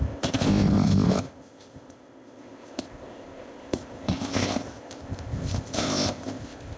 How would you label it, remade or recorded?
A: remade